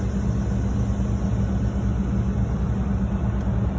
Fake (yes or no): no